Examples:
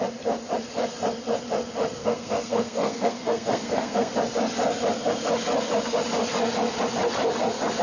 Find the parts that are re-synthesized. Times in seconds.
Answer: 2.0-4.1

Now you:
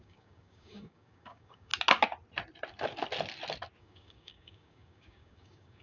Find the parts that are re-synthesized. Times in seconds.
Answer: 0.0-1.7; 3.8-5.8

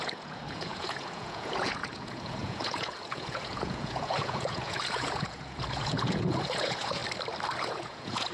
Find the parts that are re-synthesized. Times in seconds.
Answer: 0.0-7.0; 7.6-8.3

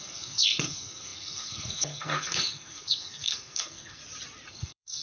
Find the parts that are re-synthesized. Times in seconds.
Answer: 0.0-4.0; 4.5-5.0

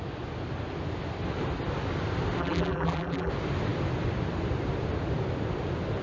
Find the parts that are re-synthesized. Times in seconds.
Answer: 2.4-3.3

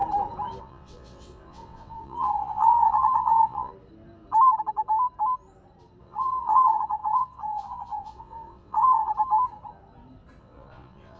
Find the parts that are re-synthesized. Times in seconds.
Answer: 0.6-3.7; 6.0-9.1; 10.4-11.2

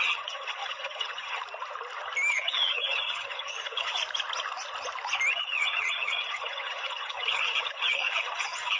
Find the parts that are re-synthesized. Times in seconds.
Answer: 0.0-1.4; 2.3-4.0; 5.3-8.8